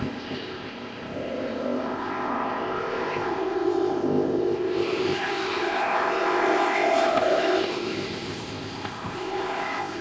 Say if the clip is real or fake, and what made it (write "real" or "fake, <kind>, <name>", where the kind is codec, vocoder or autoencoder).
fake, codec, ZipCodec